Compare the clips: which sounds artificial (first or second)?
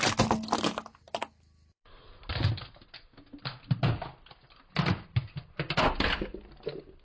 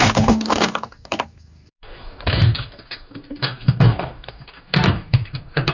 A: second